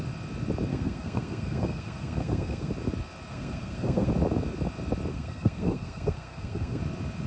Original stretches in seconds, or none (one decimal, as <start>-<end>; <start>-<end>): 0.0-0.7; 2.7-3.3; 4.1-5.1; 6.8-7.3